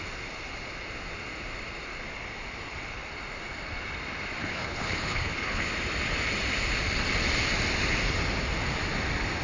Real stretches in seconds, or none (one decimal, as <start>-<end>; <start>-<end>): 0.0-4.4; 5.6-9.4